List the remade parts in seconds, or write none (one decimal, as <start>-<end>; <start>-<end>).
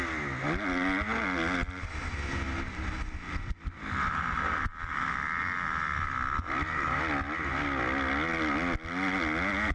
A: none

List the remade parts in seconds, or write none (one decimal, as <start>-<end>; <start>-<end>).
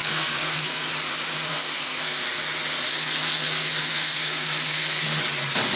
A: 0.0-0.9; 1.5-2.2; 2.9-5.0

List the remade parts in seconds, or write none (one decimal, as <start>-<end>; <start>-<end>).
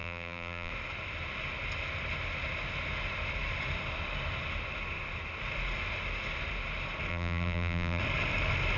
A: 0.0-0.7; 7.1-8.0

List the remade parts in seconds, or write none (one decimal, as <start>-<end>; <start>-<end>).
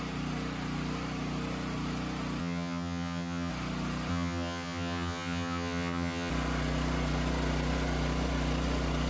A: 2.4-3.5; 4.1-6.3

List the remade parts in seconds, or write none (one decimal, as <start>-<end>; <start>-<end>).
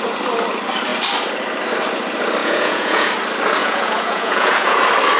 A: 2.4-3.1; 3.6-4.8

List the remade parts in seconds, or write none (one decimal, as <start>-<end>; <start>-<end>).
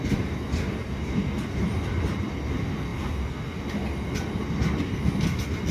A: none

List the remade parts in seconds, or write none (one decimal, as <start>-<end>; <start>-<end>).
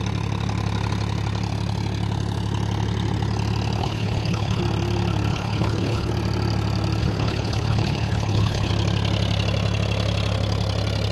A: 3.8-4.6; 5.3-6.1; 7.0-8.7